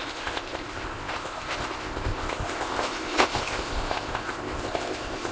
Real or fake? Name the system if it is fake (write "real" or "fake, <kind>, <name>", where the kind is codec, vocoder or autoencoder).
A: fake, codec, ZipCodec